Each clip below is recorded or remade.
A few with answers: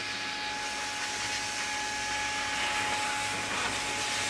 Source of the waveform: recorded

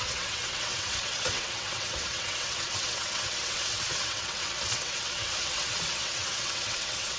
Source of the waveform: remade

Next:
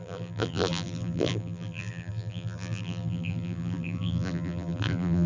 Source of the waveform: remade